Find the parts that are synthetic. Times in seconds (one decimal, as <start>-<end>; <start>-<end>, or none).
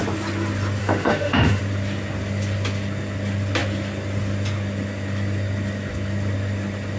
0.8-1.6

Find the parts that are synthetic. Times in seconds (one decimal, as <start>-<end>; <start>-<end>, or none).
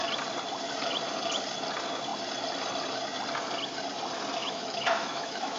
4.4-5.6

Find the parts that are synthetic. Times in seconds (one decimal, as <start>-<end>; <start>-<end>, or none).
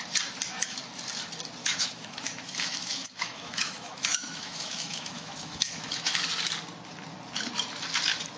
1.6-6.1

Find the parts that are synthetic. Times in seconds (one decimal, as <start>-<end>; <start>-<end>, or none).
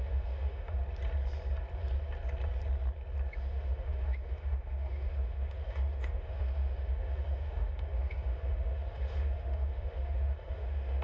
0.0-0.8; 3.4-11.0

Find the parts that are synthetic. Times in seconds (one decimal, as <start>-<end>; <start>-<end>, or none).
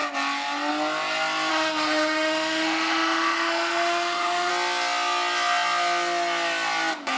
1.5-4.5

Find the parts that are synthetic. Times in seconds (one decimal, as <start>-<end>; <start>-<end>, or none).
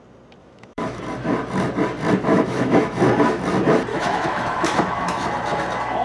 0.4-1.0; 2.3-3.0; 3.9-5.3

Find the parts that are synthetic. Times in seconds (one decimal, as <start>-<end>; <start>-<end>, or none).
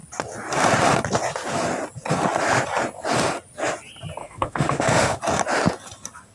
4.2-5.2